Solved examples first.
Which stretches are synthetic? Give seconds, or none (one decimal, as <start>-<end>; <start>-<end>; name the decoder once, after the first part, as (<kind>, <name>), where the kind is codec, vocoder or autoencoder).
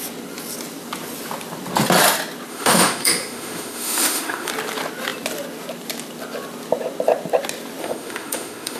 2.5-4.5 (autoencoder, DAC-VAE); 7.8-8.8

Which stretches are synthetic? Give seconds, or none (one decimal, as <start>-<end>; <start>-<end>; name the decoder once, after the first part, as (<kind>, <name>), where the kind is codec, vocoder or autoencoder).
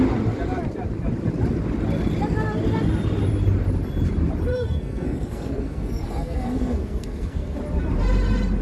4.5-7.6 (codec, SNAC)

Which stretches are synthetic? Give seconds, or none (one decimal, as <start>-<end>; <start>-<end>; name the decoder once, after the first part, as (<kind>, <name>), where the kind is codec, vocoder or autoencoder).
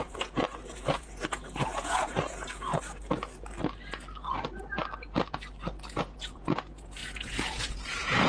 0.0-2.7 (vocoder, Vocos); 5.9-8.3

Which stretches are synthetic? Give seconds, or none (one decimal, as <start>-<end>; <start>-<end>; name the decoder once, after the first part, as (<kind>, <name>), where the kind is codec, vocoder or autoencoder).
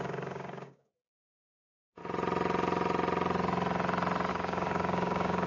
0.0-2.0 (codec, DAC); 4.3-5.5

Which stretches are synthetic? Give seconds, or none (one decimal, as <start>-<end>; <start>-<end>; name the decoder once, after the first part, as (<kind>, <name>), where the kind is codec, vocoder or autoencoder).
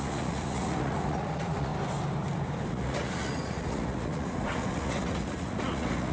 0.0-1.7 (vocoder, Vocos); 2.7-6.1